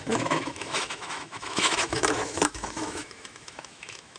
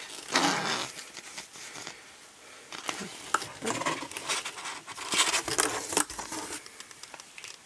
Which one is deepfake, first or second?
first